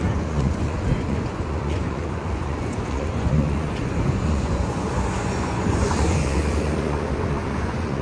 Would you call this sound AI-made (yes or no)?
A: yes